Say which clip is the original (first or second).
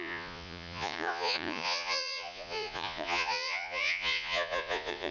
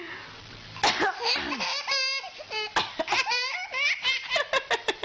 second